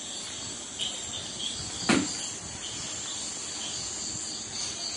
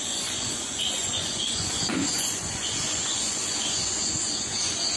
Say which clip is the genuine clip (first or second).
first